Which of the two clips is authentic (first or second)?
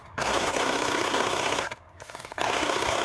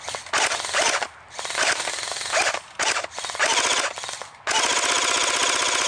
second